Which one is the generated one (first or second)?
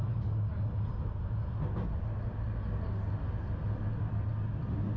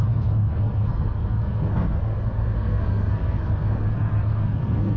second